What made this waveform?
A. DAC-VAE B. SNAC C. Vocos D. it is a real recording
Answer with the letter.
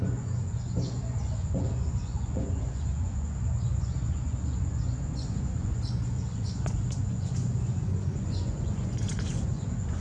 C